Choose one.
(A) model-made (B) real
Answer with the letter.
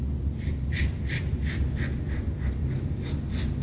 B